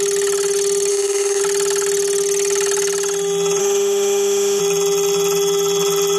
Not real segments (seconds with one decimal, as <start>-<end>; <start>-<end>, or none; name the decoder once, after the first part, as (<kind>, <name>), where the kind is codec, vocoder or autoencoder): 0.9-1.4 (autoencoder, DAC-VAE); 3.6-4.6